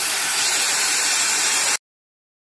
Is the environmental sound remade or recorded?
recorded